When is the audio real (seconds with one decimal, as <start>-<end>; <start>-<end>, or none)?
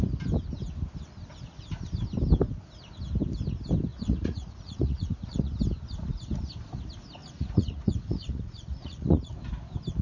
0.0-3.9; 5.5-7.2; 9.3-10.0